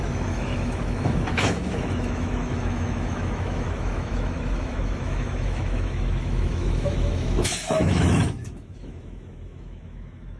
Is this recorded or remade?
remade